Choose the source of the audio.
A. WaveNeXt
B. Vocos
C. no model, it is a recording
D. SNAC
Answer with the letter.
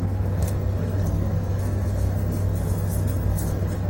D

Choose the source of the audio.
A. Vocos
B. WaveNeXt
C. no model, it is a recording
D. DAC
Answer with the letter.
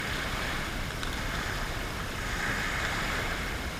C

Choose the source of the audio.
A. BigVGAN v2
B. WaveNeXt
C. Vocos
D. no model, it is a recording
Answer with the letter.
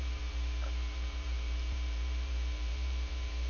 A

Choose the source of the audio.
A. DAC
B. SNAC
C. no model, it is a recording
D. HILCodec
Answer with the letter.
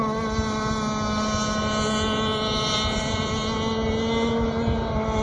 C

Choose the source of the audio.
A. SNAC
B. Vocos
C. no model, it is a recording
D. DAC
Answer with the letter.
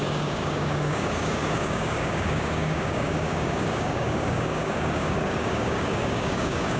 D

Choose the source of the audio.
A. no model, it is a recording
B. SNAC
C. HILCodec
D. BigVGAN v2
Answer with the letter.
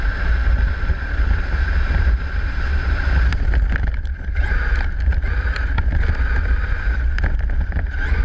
A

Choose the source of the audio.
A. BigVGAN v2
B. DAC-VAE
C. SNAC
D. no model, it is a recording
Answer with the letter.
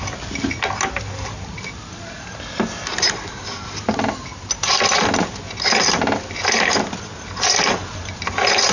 D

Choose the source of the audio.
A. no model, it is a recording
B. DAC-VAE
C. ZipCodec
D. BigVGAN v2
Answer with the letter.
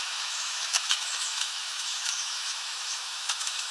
B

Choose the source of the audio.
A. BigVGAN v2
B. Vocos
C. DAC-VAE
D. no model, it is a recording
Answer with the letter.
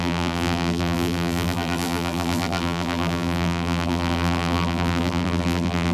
A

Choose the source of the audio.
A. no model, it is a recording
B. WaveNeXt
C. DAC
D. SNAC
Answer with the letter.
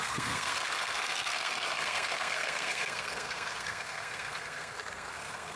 D